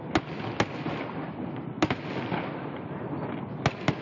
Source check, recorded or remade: recorded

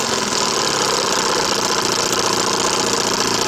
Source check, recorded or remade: recorded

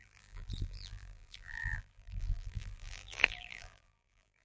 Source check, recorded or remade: remade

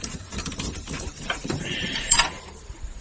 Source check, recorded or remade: remade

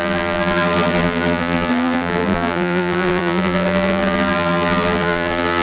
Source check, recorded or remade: remade